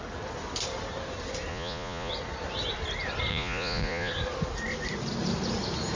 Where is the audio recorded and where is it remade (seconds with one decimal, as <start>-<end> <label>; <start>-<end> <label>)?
0.0-1.5 recorded; 1.5-2.1 remade; 2.1-3.3 recorded; 3.3-4.1 remade; 4.1-6.0 recorded